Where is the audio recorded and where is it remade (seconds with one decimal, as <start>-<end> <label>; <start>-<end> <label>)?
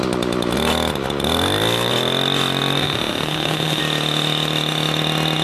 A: 0.0-2.8 recorded; 2.8-3.8 remade; 3.8-5.4 recorded